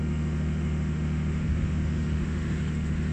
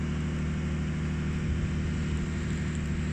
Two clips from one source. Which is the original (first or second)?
second